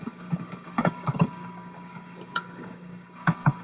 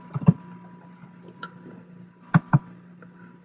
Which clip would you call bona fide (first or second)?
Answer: second